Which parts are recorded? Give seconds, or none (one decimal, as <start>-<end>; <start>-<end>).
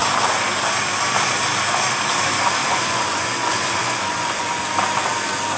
0.0-2.6; 4.6-5.6